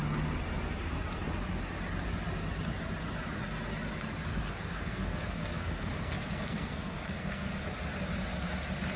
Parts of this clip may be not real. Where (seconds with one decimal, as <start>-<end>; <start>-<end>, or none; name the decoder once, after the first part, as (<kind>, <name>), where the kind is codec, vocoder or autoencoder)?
4.3-7.5 (codec, SNAC)